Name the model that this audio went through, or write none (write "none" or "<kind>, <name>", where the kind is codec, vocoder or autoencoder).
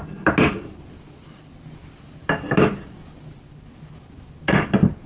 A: none